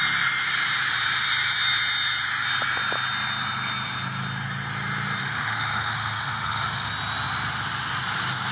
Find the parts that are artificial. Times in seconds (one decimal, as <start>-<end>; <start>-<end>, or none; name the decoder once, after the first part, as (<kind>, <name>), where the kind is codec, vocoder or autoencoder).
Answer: 5.2-6.9 (autoencoder, DAC-VAE)